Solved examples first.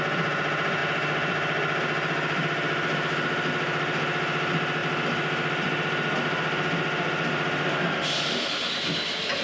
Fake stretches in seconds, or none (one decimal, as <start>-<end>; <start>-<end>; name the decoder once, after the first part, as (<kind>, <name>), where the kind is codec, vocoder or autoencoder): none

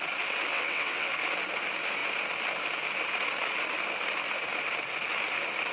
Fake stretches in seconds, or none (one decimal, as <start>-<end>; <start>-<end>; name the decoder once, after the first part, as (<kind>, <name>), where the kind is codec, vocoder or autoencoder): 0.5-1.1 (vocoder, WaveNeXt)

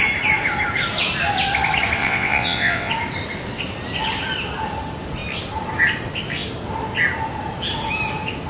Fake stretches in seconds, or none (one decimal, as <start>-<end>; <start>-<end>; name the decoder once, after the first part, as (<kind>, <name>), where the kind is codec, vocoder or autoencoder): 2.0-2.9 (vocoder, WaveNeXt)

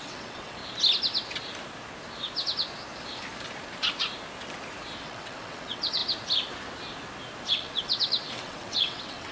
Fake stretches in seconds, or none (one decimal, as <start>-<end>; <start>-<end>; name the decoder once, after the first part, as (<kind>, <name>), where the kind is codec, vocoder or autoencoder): 0.0-0.6 (vocoder, WaveNeXt); 5.0-6.0; 7.5-9.3